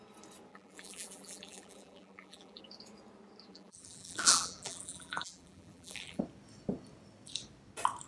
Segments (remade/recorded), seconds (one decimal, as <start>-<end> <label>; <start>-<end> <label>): 0.0-0.5 recorded; 0.5-2.6 remade; 2.6-3.5 recorded; 3.5-6.2 remade; 6.2-8.1 recorded